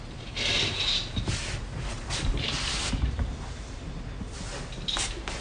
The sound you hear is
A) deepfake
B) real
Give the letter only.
B